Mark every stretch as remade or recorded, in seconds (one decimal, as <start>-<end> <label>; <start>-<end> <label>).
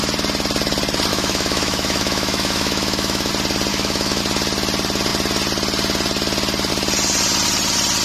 0.0-1.1 recorded; 1.1-3.3 remade; 3.3-3.7 recorded; 3.7-4.2 remade; 4.2-8.0 recorded